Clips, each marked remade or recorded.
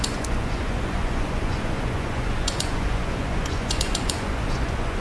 remade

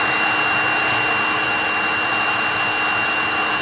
recorded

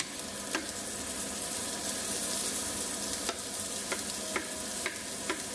recorded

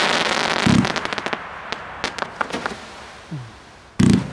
recorded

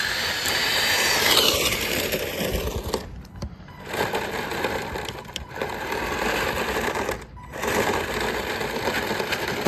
recorded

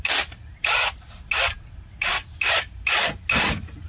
recorded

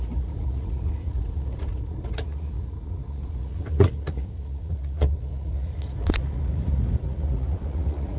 remade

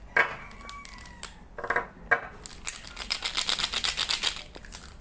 recorded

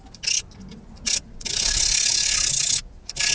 recorded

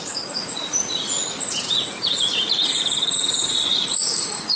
remade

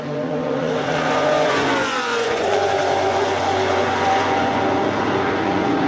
remade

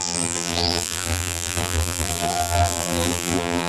remade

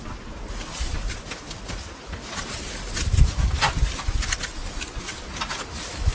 recorded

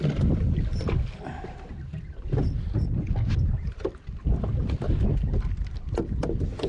recorded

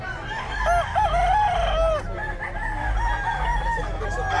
recorded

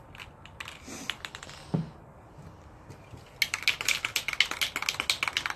recorded